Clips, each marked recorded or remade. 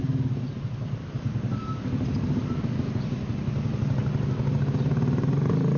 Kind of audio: recorded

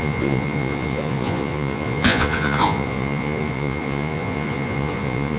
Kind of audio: remade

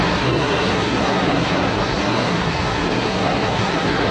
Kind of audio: remade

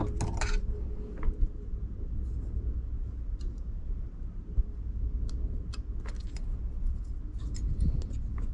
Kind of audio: recorded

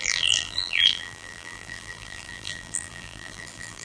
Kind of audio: remade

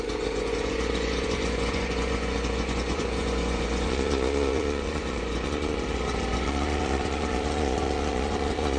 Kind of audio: remade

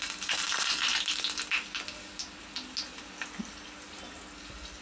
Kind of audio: recorded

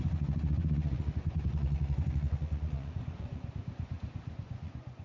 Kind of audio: remade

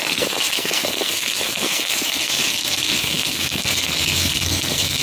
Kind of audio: remade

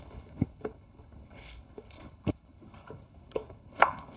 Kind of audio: remade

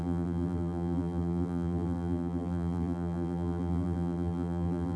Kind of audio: remade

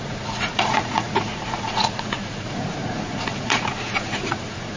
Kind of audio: remade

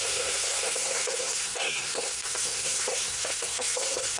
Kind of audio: remade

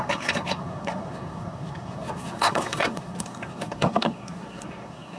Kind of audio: remade